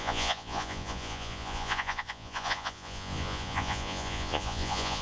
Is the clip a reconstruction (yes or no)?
yes